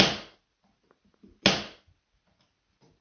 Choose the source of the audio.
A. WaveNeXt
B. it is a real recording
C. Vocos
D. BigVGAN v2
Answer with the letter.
B